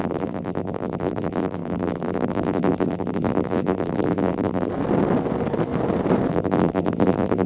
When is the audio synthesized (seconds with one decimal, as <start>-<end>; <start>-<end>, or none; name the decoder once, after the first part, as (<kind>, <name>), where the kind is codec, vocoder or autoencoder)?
0.0-4.7 (vocoder, BigVGAN v2); 6.3-7.5